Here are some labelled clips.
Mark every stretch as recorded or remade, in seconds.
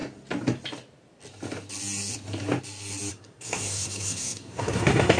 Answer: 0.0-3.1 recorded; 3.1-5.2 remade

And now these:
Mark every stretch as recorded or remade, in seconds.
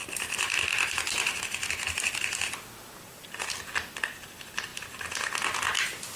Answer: 0.0-6.2 recorded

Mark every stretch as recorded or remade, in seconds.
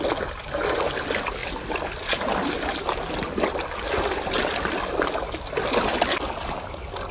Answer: 0.0-7.1 recorded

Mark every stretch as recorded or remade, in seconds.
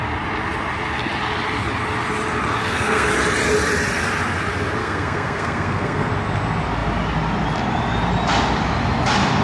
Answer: 0.0-2.6 recorded; 2.6-3.1 remade; 3.1-4.8 recorded; 4.8-6.1 remade; 6.1-9.4 recorded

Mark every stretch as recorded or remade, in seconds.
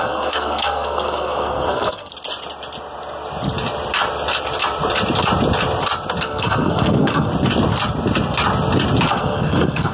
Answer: 0.0-2.1 remade; 2.1-6.2 recorded; 6.2-7.3 remade; 7.3-9.1 recorded; 9.1-9.9 remade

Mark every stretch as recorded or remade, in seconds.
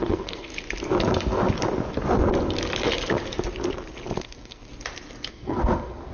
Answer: 0.0-0.5 remade; 0.5-4.2 recorded; 4.2-4.7 remade; 4.7-5.3 recorded; 5.3-6.1 remade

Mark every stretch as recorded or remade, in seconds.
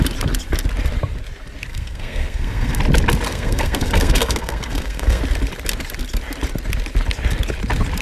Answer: 0.0-1.7 recorded; 1.7-2.8 remade; 2.8-3.3 recorded; 3.3-5.2 remade; 5.2-8.0 recorded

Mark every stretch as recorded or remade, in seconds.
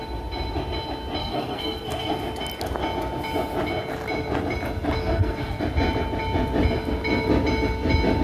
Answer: 0.0-1.2 recorded; 1.2-2.1 remade; 2.1-5.0 recorded; 5.0-5.6 remade; 5.6-8.2 recorded